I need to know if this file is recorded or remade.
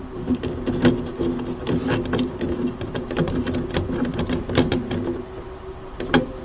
recorded